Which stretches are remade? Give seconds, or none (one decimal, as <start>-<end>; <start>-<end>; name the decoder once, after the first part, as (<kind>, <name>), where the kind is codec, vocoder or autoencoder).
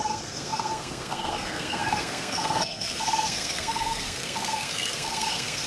0.0-5.7 (codec, SNAC)